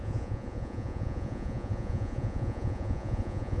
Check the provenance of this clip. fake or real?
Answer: fake